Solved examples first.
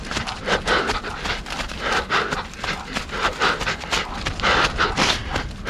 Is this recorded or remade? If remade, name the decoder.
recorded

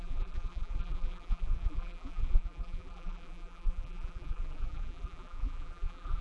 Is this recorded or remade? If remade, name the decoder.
remade, vocoder, BigVGAN v2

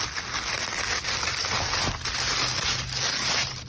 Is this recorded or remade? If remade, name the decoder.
recorded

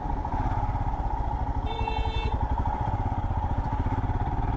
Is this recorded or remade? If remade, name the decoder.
remade, vocoder, BigVGAN v2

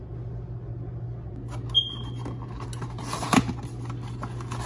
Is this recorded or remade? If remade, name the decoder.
recorded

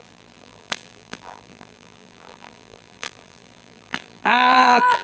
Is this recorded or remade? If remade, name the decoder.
remade, vocoder, BigVGAN v2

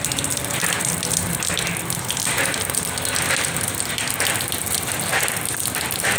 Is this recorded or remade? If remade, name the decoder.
remade, vocoder, BigVGAN v2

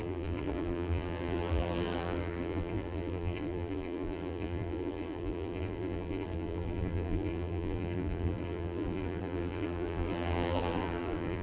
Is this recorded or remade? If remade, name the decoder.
remade, vocoder, BigVGAN v2